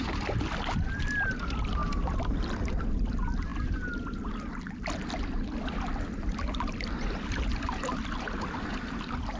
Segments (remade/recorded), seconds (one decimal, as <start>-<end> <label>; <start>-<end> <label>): 0.0-9.4 recorded

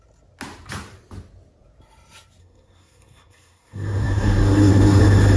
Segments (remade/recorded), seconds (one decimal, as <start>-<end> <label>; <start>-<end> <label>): 0.0-2.4 recorded; 2.4-5.0 remade; 5.0-5.4 recorded

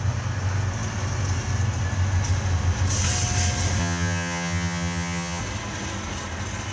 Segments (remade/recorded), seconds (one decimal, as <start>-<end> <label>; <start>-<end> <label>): 0.0-3.8 recorded; 3.8-5.4 remade; 5.4-6.7 recorded

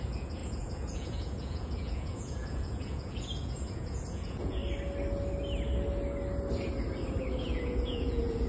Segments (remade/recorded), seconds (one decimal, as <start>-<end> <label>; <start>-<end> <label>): 0.0-4.6 remade; 4.6-7.4 recorded; 7.4-8.5 remade

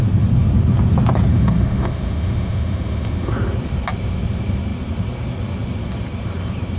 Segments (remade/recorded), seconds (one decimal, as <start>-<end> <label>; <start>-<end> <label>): 0.0-1.3 recorded; 1.3-3.3 remade; 3.3-6.8 recorded